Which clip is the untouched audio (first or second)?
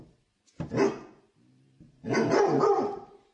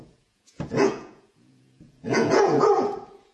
first